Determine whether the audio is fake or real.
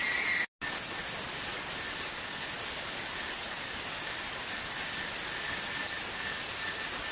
real